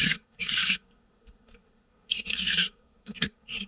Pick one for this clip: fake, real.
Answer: fake